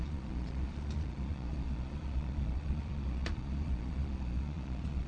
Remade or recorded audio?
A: remade